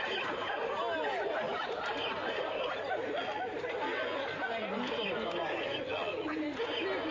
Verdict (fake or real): real